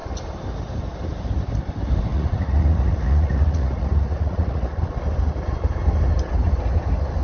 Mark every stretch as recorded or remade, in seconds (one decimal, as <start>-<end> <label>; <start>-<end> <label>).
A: 0.0-2.1 recorded; 2.1-4.8 remade; 4.8-7.2 recorded